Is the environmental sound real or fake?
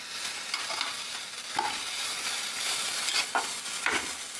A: real